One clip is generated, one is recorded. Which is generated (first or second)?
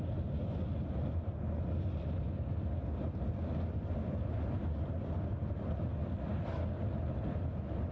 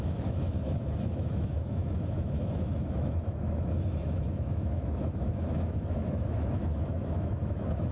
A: second